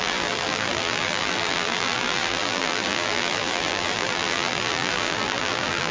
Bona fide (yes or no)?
no